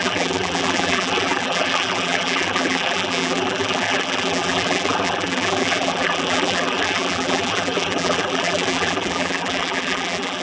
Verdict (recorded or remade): remade